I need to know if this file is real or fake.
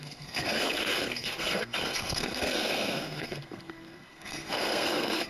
fake